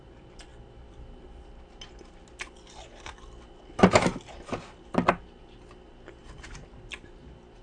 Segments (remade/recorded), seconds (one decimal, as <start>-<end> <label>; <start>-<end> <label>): 0.0-7.6 recorded